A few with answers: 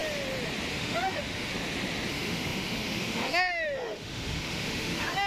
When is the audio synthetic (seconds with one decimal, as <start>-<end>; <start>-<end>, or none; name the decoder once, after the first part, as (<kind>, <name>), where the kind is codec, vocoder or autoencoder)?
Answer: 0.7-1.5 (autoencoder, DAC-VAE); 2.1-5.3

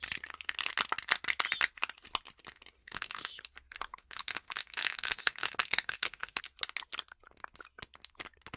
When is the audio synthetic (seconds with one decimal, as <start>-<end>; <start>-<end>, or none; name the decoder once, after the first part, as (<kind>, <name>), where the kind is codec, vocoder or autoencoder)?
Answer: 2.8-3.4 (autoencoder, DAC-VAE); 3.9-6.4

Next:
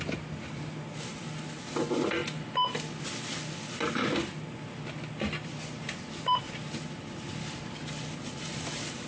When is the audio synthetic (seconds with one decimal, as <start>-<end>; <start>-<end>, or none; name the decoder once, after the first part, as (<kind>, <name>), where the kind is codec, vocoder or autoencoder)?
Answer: none